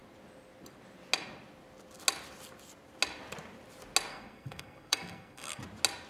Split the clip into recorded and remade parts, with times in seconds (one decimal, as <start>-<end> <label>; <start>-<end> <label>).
0.0-4.1 recorded; 4.1-5.6 remade; 5.6-6.1 recorded

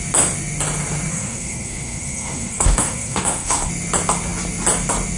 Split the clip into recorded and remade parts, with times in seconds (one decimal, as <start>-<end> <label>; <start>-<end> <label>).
0.0-1.1 recorded; 1.1-3.7 remade; 3.7-5.2 recorded

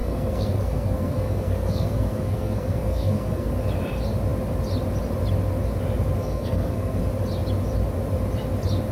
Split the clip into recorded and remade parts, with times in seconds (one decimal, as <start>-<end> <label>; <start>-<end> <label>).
0.0-3.5 remade; 3.5-6.2 recorded; 6.2-7.0 remade; 7.0-8.9 recorded

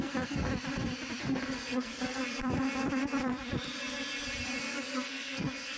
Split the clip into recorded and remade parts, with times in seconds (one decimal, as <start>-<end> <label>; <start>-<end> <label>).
0.0-0.5 remade; 0.5-1.2 recorded; 1.2-2.2 remade; 2.2-4.6 recorded; 4.6-5.8 remade

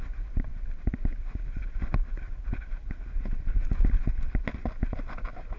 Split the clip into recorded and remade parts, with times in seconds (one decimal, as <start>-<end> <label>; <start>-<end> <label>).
0.0-5.6 recorded

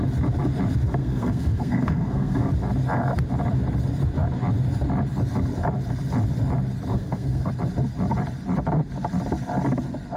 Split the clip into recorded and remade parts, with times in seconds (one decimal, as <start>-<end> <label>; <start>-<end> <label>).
0.0-1.0 recorded; 1.0-2.5 remade; 2.5-6.9 recorded; 6.9-7.5 remade; 7.5-10.2 recorded